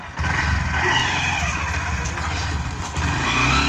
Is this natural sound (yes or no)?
yes